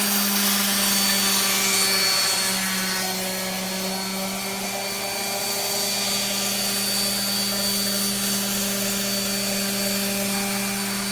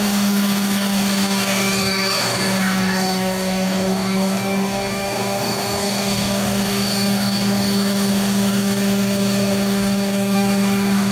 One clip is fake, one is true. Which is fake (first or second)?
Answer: second